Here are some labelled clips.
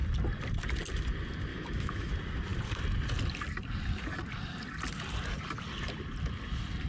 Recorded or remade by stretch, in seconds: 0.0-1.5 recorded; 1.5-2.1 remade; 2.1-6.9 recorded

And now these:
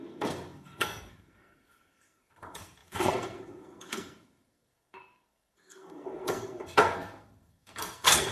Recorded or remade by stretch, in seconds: 0.0-8.3 remade

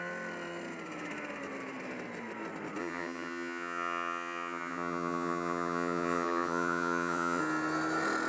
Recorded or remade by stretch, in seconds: 0.0-2.8 recorded; 2.8-7.4 remade; 7.4-8.3 recorded

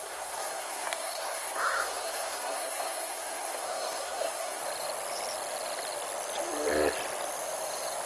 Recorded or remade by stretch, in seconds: 0.0-4.6 remade; 4.6-8.1 recorded